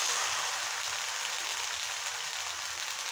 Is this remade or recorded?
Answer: recorded